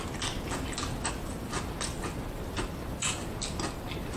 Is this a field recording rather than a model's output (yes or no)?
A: yes